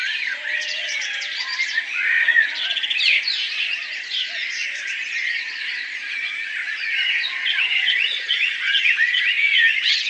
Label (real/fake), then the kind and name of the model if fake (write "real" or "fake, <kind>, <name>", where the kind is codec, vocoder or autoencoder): fake, vocoder, Vocos